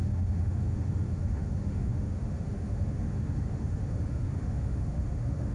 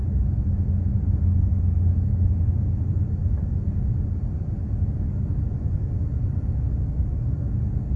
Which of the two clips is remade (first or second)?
first